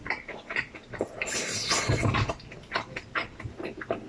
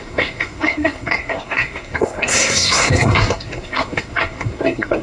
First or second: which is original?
first